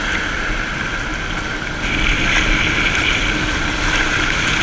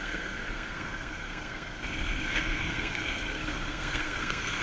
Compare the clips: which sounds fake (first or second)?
second